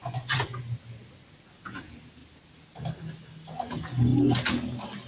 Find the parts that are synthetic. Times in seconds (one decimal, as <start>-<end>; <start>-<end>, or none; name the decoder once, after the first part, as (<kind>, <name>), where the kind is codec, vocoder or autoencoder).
0.0-0.6 (vocoder, Vocos)